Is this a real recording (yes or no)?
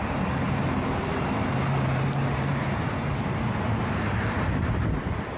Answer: no